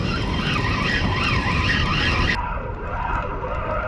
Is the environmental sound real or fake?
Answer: fake